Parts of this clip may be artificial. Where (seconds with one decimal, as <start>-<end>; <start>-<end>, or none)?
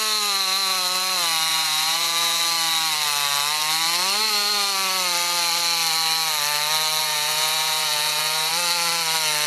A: 1.5-2.4; 7.0-8.5